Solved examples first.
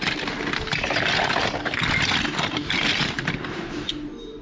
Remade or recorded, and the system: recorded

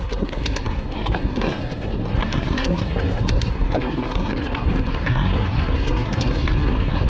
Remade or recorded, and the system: remade, codec, SNAC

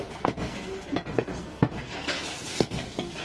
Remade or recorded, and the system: remade, codec, SNAC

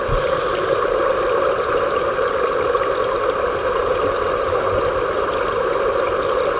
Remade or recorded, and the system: recorded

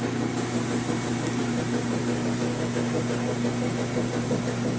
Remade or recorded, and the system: recorded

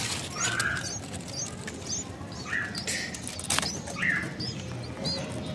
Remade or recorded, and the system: recorded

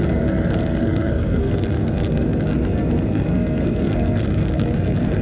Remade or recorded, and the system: remade, codec, SNAC